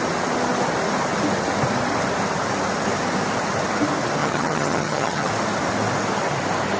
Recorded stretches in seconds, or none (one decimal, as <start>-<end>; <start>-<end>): 0.0-4.2; 5.3-6.8